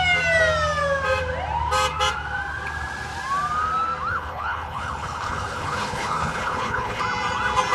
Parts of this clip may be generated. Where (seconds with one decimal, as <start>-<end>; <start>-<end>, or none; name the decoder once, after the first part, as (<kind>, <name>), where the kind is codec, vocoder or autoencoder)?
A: 4.1-7.0 (codec, HILCodec)